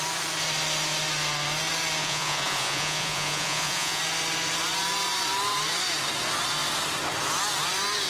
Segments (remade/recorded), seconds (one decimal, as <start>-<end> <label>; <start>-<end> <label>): 0.0-2.0 recorded; 2.0-4.0 remade; 4.0-8.1 recorded